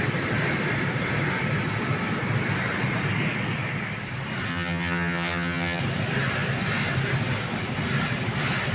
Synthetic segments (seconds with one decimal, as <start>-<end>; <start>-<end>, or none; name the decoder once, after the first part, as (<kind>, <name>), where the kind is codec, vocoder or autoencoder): 4.5-5.8 (vocoder, HiFi-GAN)